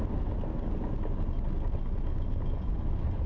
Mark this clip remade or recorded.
recorded